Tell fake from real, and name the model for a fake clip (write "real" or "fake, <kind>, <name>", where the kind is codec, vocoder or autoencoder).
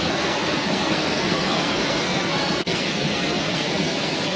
fake, codec, SNAC